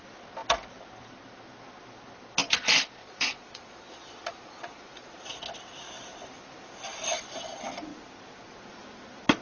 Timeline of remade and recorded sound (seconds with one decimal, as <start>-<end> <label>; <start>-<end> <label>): 0.0-3.0 recorded; 3.0-5.4 remade; 5.4-9.4 recorded